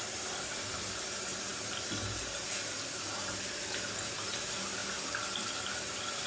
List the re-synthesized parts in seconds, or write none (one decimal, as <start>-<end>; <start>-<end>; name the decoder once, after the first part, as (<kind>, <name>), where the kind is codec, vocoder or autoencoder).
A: none